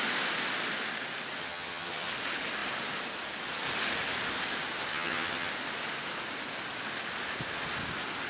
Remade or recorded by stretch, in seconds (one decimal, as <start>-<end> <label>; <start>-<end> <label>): 0.0-1.4 recorded; 1.4-2.1 remade; 2.1-4.9 recorded; 4.9-5.5 remade; 5.5-8.3 recorded